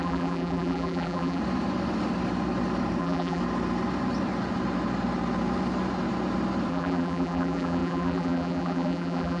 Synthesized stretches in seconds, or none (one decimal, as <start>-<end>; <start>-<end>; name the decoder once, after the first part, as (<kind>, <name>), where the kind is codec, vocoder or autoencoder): 0.0-1.4 (vocoder, BigVGAN v2); 3.0-3.4; 6.7-9.4